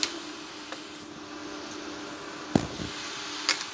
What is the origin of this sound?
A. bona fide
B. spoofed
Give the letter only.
A